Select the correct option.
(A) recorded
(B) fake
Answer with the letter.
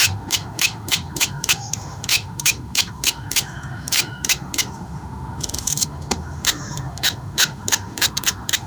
B